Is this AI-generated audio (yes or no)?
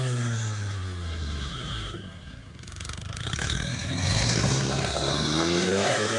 yes